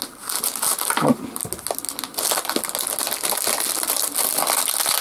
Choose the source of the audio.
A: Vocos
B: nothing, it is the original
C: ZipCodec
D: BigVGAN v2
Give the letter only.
B